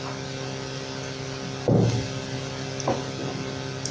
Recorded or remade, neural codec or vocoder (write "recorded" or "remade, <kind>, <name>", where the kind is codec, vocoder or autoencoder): recorded